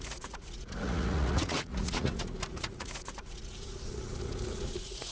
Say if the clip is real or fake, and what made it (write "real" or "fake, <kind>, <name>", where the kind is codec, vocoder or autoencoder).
fake, vocoder, Vocos